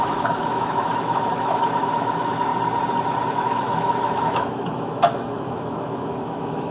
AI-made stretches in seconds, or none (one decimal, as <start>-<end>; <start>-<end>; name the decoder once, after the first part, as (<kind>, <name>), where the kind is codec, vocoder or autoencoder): 0.0-2.5 (autoencoder, DAC-VAE); 3.3-6.7